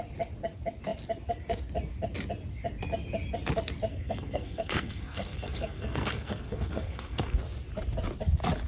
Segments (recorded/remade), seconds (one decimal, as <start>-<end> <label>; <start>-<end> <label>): 0.0-3.9 recorded; 3.9-7.4 remade; 7.4-8.7 recorded